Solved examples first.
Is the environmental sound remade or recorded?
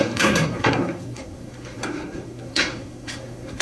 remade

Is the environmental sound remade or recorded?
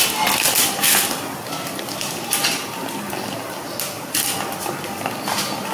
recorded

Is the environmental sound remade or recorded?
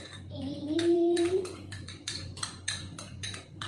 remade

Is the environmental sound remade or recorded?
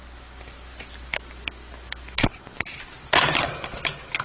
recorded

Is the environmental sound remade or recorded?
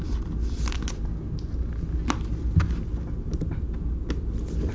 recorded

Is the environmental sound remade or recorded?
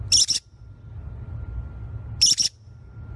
recorded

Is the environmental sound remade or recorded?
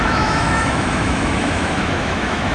remade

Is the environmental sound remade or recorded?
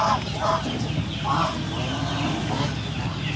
recorded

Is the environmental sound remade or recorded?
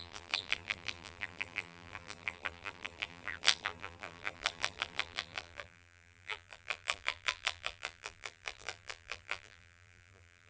remade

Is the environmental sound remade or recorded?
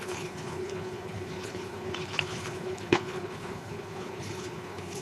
remade